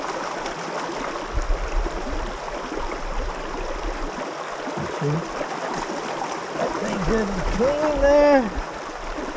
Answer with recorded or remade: recorded